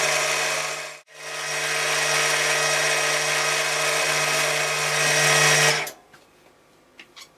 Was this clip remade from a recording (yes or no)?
no